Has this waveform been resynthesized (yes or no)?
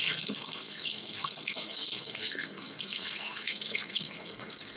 yes